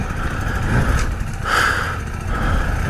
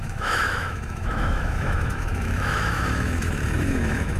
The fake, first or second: second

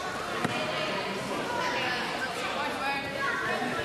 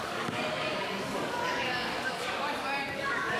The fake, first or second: second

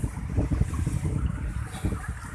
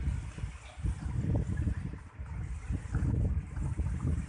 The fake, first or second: first